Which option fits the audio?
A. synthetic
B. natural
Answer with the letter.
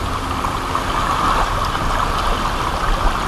B